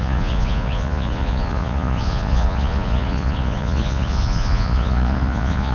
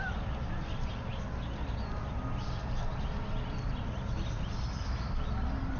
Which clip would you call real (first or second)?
second